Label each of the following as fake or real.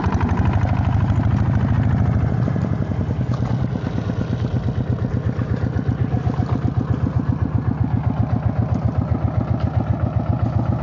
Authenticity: real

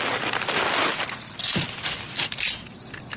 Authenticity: real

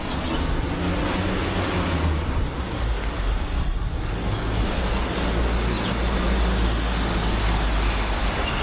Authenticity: real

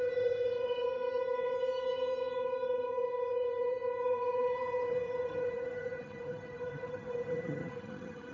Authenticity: fake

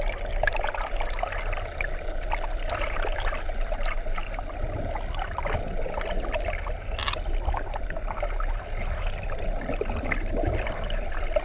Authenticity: real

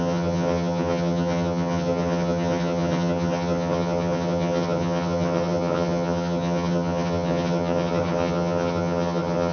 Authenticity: fake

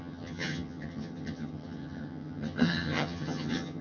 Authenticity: fake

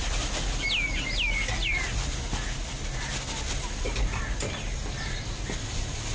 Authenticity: real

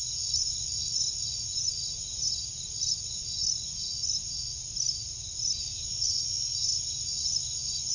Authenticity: real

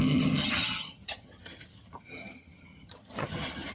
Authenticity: fake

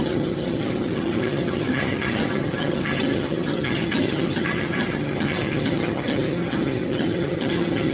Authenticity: fake